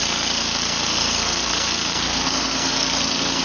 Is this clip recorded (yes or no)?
no